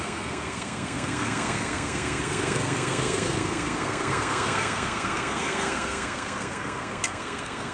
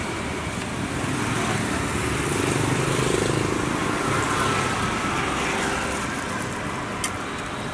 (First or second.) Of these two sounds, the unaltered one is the second